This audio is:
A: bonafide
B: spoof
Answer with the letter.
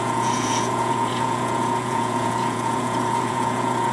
B